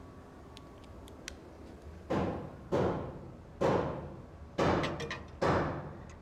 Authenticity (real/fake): real